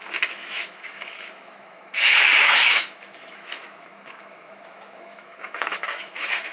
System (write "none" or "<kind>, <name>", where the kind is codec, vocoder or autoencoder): autoencoder, DAC-VAE